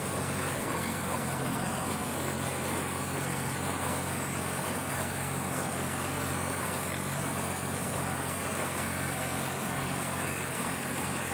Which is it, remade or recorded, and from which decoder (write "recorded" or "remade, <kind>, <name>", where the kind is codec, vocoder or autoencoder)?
remade, codec, SNAC